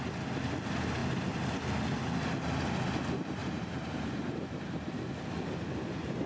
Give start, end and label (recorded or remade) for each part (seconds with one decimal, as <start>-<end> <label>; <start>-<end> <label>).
0.0-3.4 recorded; 3.4-5.0 remade; 5.0-6.3 recorded